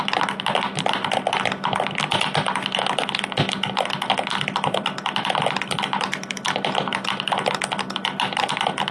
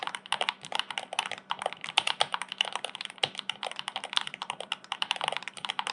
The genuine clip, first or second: first